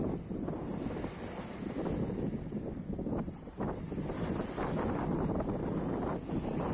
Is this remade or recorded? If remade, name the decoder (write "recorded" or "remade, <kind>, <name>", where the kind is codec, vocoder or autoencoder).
recorded